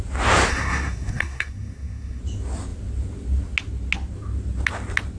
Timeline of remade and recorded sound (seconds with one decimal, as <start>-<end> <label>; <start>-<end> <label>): 0.0-0.5 recorded; 0.5-2.2 remade; 2.2-5.2 recorded